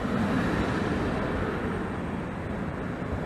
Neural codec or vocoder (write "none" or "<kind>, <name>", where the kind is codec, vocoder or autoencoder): none